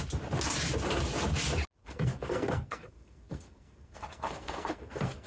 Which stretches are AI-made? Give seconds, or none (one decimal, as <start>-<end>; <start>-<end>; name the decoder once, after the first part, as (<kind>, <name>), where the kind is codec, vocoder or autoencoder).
1.8-5.3 (codec, SNAC)